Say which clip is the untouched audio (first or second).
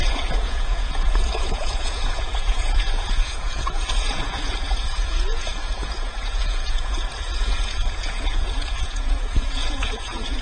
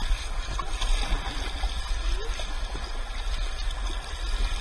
second